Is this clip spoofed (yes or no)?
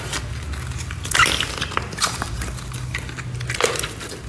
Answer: no